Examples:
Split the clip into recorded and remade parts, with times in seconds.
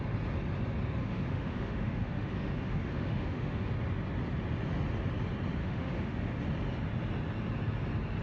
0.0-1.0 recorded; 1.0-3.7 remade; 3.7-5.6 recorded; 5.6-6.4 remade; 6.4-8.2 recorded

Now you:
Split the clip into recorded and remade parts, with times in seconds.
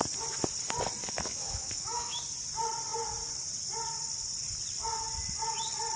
0.0-1.0 recorded; 1.0-2.2 remade; 2.2-6.0 recorded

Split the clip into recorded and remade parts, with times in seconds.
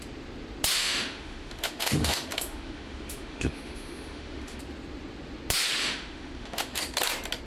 0.0-0.7 recorded; 0.7-4.6 remade; 4.6-5.8 recorded; 5.8-6.8 remade; 6.8-7.5 recorded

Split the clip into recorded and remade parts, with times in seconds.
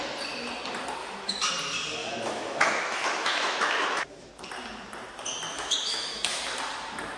0.0-1.0 recorded; 1.0-1.5 remade; 1.5-2.0 recorded; 2.0-4.3 remade; 4.3-5.5 recorded; 5.5-6.4 remade; 6.4-7.2 recorded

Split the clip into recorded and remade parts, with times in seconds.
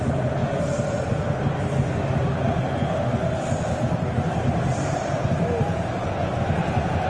0.0-7.1 recorded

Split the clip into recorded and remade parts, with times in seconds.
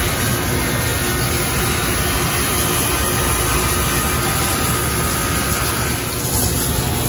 0.0-7.1 recorded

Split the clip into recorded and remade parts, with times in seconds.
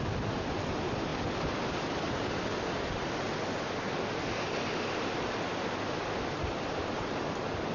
0.0-7.7 recorded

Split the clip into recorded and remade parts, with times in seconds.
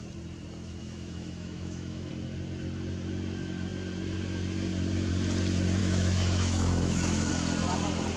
0.0-0.8 recorded; 0.8-2.1 remade; 2.1-5.8 recorded; 5.8-7.3 remade; 7.3-8.2 recorded